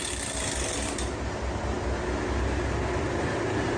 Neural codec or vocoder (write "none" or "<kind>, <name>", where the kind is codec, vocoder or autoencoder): none